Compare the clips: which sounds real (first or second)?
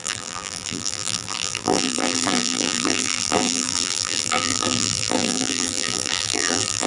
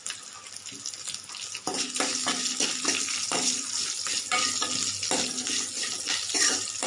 second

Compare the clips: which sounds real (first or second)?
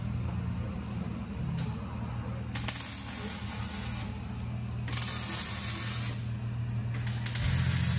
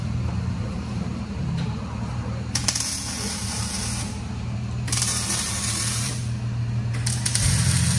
first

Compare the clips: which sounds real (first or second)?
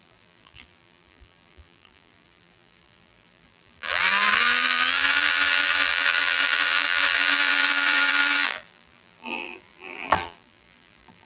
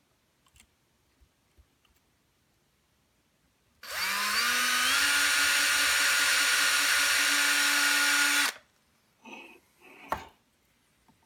second